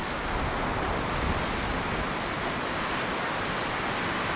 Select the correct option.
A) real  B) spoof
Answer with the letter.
A